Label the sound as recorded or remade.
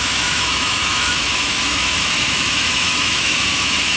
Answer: remade